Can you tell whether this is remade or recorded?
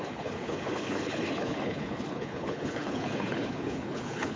remade